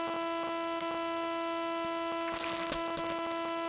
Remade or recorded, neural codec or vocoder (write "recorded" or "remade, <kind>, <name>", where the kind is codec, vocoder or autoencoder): recorded